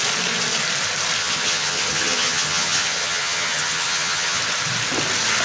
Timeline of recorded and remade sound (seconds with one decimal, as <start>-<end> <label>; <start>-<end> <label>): 0.0-1.2 recorded; 1.2-4.4 remade; 4.4-5.4 recorded